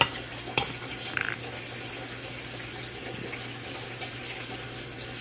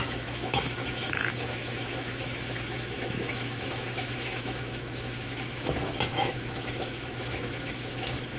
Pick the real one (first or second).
first